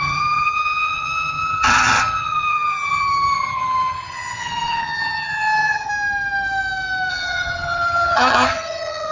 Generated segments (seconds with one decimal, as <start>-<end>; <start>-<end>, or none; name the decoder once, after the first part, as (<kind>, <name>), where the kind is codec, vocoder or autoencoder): 0.0-5.9 (vocoder, HiFi-GAN); 7.1-9.1